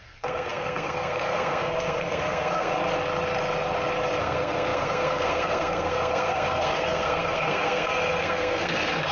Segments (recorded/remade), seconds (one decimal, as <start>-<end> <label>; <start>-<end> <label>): 0.0-2.7 remade; 2.7-4.2 recorded; 4.2-9.1 remade